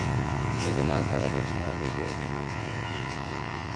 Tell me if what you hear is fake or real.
fake